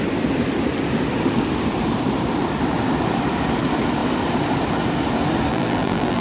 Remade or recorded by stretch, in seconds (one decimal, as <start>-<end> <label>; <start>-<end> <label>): 0.0-5.5 recorded; 5.5-6.2 remade

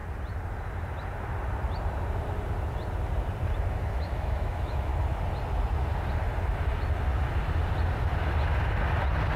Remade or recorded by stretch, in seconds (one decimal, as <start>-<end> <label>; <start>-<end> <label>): 0.0-3.7 recorded; 3.7-4.9 remade; 4.9-9.4 recorded

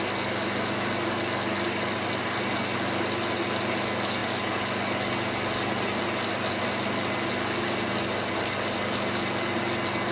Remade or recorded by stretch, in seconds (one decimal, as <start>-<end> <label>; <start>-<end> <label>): 0.0-10.1 recorded